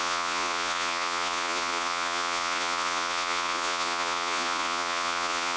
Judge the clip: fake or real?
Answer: fake